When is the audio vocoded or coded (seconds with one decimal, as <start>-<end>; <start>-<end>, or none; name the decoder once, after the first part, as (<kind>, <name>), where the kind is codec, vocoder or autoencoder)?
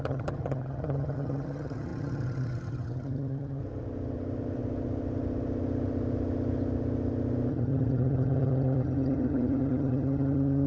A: 0.0-3.6 (vocoder, HiFi-GAN); 7.5-10.7